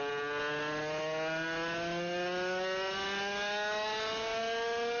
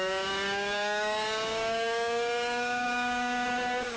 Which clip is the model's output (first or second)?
second